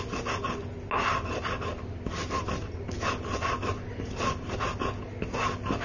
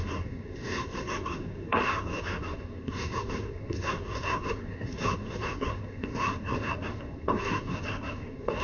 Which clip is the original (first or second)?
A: first